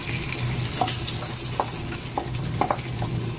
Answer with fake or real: real